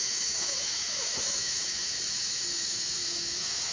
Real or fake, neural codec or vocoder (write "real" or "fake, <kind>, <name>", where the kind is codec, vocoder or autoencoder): fake, autoencoder, DAC-VAE